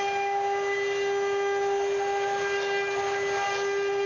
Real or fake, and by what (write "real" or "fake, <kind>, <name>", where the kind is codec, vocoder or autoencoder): real